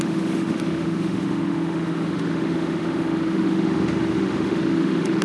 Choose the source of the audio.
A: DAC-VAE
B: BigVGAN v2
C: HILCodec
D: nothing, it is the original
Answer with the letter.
A